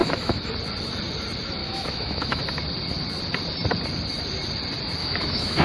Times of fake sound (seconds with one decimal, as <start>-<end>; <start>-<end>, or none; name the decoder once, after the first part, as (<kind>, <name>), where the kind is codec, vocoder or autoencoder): 0.0-0.5 (autoencoder, DAC-VAE); 1.6-2.4; 5.0-5.6